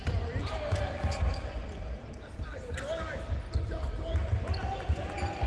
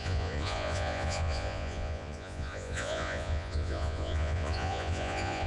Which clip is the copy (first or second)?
second